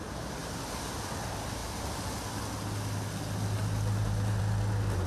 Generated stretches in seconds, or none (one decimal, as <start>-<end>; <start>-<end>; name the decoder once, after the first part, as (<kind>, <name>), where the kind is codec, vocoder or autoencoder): none